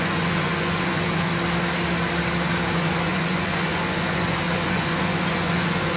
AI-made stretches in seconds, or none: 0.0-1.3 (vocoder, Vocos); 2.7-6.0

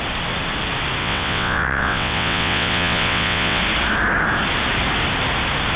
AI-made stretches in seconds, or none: 1.0-3.6 (vocoder, WaveNeXt)